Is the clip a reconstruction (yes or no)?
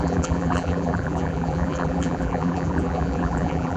yes